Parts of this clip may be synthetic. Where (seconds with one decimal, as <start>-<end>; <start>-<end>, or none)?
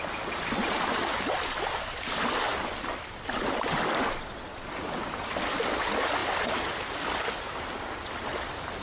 none